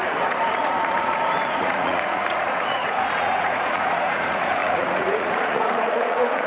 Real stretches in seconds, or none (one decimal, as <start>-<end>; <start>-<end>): none